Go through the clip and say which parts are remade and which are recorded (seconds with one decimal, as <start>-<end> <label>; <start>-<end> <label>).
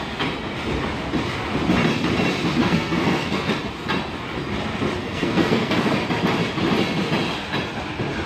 0.0-2.6 recorded; 2.6-3.5 remade; 3.5-5.0 recorded; 5.0-5.9 remade; 5.9-8.3 recorded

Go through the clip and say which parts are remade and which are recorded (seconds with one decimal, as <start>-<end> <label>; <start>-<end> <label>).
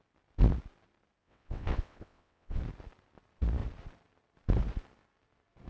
0.0-1.2 recorded; 1.2-2.6 remade; 2.6-5.7 recorded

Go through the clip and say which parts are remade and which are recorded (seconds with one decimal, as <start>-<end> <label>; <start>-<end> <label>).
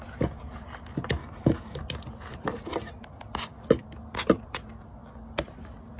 0.0-1.2 recorded; 1.2-1.8 remade; 1.8-6.0 recorded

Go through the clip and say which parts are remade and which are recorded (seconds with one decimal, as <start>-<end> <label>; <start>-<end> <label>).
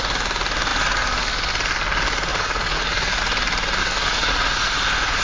0.0-2.3 recorded; 2.3-3.2 remade; 3.2-3.8 recorded; 3.8-4.3 remade; 4.3-5.2 recorded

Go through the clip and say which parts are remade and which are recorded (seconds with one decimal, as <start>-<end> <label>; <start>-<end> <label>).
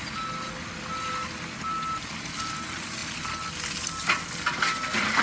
0.0-5.2 recorded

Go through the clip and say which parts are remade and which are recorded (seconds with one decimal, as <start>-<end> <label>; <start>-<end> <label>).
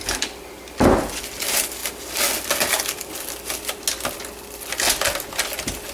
0.0-5.9 recorded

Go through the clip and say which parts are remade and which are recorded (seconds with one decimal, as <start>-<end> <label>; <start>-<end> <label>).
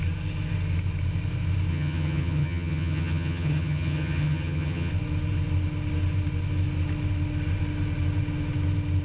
0.0-1.7 recorded; 1.7-4.9 remade; 4.9-9.0 recorded